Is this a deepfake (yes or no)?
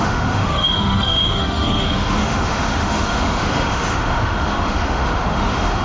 yes